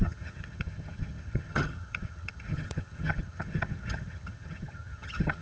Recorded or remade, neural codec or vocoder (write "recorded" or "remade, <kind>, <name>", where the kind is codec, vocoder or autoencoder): remade, vocoder, HiFi-GAN